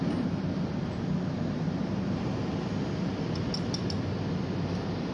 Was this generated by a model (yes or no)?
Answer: no